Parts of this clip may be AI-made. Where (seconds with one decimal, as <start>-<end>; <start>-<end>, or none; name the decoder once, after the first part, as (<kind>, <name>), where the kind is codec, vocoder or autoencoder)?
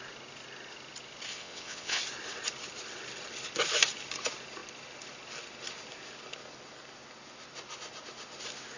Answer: 1.3-2.0 (vocoder, WaveNeXt)